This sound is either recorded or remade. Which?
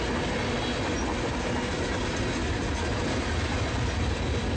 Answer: recorded